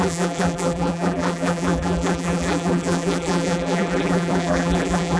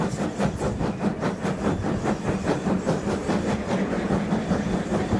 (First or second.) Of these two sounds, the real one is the second